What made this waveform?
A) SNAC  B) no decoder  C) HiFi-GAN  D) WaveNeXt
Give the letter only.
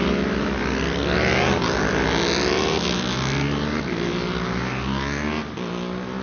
B